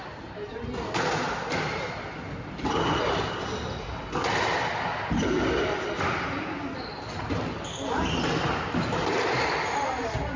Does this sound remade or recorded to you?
recorded